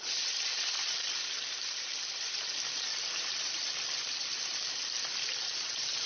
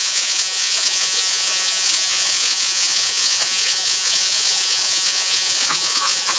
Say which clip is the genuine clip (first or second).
first